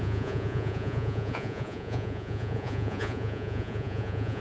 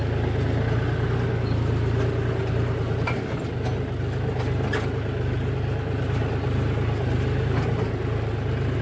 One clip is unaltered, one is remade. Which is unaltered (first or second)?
second